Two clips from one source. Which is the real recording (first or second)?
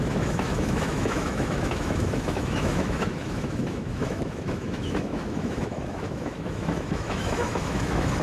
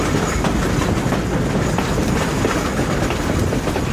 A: second